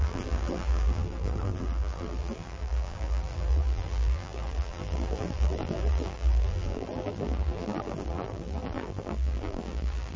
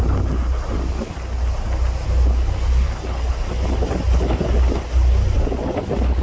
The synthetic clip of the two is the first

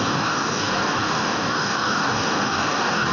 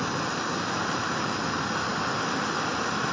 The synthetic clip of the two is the first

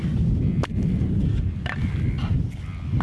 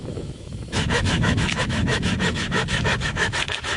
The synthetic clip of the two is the second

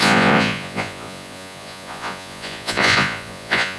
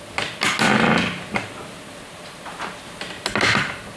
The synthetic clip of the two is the first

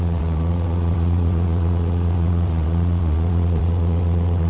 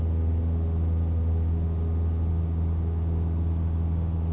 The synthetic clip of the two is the first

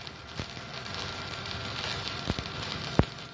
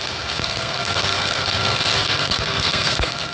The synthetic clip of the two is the second